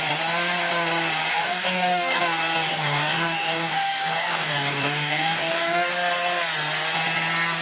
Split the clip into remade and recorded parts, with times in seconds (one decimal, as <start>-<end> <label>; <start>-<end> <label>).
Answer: 0.0-1.3 recorded; 1.3-2.2 remade; 2.2-2.7 recorded; 2.7-5.9 remade; 5.9-7.6 recorded

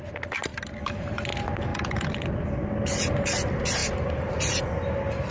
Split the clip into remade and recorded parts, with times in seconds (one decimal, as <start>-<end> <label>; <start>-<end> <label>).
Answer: 0.0-5.3 recorded

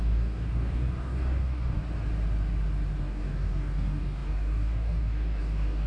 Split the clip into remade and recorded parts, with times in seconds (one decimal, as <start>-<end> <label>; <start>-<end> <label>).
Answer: 0.0-1.8 remade; 1.8-3.0 recorded; 3.0-5.9 remade

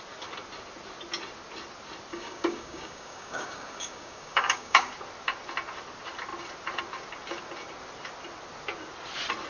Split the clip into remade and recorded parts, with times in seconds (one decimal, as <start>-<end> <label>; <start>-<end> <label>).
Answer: 0.0-2.1 recorded; 2.1-4.9 remade; 4.9-9.5 recorded

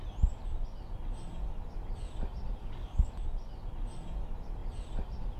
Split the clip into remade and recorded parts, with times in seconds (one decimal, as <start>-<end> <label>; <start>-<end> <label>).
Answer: 0.0-2.6 recorded; 2.6-3.1 remade; 3.1-5.4 recorded

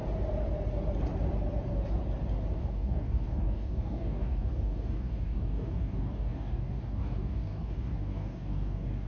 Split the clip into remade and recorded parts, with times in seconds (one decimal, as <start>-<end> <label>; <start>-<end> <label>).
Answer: 0.0-2.6 recorded; 2.6-9.1 remade

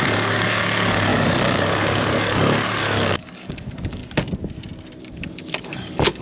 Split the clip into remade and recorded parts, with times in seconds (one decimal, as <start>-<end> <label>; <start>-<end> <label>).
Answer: 0.0-4.0 remade; 4.0-5.0 recorded; 5.0-6.2 remade

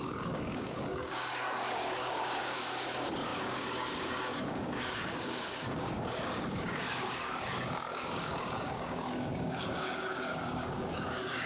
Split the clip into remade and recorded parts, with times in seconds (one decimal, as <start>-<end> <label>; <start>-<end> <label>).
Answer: 0.0-11.5 remade